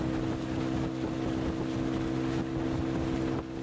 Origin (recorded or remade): recorded